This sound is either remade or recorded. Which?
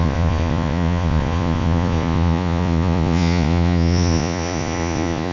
remade